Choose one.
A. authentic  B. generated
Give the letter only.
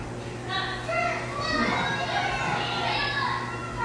A